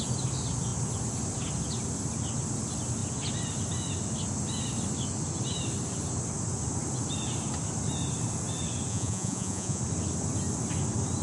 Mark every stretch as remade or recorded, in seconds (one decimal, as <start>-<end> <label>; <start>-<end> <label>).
0.0-8.9 recorded; 8.9-9.8 remade; 9.8-11.2 recorded